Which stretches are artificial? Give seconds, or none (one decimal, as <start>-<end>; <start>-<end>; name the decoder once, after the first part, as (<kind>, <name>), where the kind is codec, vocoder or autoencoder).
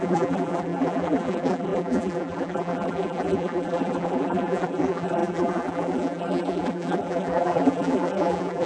0.0-8.7 (vocoder, BigVGAN v2)